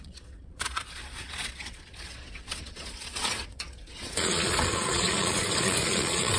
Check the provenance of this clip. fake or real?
fake